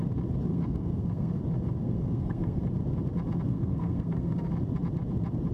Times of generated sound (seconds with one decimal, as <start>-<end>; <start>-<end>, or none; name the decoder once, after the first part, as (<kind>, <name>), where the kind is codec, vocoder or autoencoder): 0.5-1.4 (codec, SNAC); 1.8-2.6; 3.5-4.5